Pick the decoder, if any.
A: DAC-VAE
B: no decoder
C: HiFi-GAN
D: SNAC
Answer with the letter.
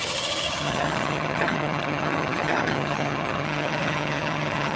C